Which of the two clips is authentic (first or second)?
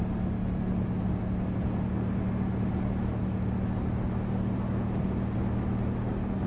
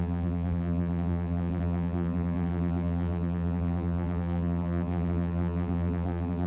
first